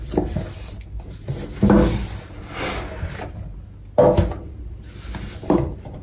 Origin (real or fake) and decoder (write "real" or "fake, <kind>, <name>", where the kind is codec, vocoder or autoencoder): real